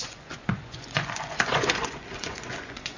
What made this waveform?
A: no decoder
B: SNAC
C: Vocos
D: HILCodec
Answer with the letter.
C